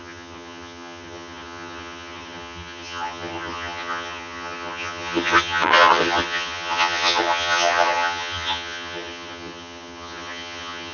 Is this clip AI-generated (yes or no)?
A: yes